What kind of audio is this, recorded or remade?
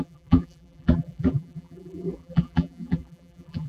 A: remade